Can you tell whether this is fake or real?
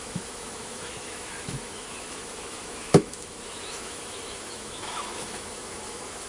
fake